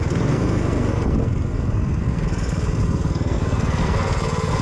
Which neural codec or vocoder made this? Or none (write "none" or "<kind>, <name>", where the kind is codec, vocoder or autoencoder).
codec, SNAC